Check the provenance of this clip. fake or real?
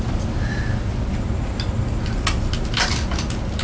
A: real